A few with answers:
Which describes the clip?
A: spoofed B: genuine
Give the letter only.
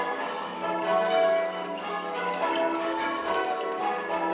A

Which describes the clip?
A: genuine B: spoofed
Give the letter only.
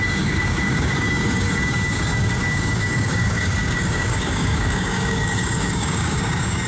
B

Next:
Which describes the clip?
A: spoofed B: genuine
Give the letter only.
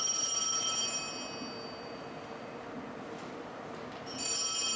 B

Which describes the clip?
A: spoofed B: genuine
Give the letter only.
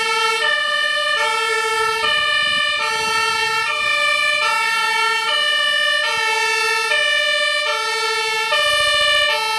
B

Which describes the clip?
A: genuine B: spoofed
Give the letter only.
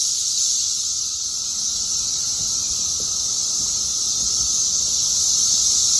A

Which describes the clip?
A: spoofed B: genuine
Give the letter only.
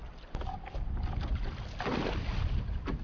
B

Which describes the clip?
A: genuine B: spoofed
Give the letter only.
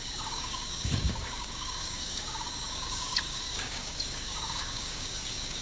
B